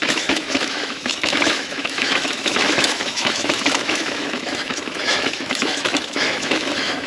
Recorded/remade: remade